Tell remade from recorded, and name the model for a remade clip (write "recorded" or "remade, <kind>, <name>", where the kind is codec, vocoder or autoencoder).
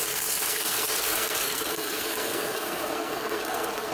remade, codec, SNAC